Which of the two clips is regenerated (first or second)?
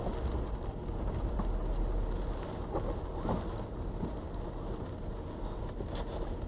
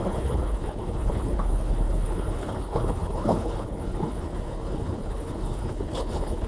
second